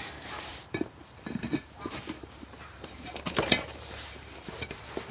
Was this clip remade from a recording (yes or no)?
yes